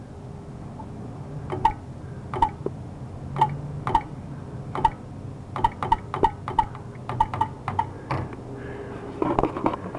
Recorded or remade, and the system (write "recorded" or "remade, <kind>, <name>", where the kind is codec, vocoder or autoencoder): recorded